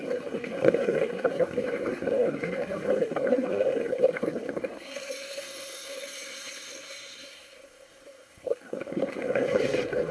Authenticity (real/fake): fake